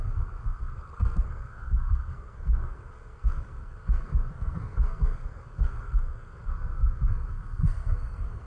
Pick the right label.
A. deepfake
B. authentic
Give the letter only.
A